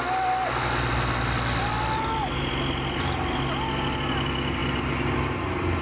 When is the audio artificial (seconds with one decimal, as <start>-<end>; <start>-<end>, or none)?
none